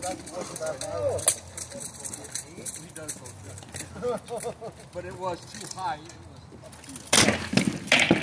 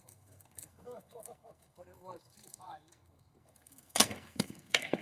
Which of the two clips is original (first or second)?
first